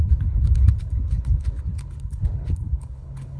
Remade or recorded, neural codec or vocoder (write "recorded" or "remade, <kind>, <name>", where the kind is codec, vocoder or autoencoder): remade, codec, HILCodec